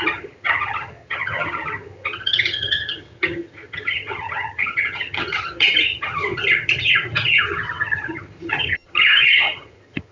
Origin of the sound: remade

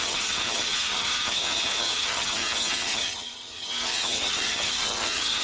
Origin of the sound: remade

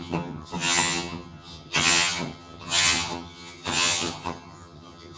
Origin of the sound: remade